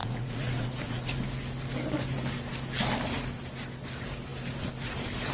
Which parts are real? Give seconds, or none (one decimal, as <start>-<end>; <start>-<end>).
1.1-5.3